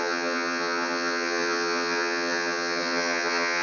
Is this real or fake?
fake